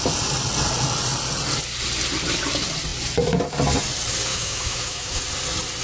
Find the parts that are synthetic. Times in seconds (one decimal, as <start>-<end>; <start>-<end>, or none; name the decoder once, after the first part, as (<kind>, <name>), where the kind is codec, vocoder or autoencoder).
4.3-5.2 (autoencoder, DAC-VAE)